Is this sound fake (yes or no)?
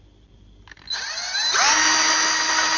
no